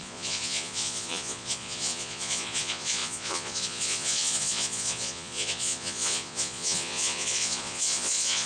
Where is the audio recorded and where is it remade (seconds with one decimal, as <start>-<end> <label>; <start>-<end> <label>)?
0.0-8.5 remade